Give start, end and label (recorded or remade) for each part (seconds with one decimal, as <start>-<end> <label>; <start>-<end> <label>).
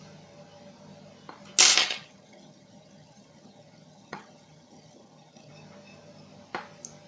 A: 0.0-1.8 recorded; 1.8-5.5 remade; 5.5-7.1 recorded